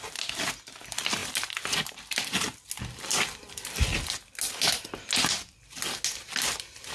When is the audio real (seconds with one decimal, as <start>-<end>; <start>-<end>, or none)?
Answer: 0.0-6.9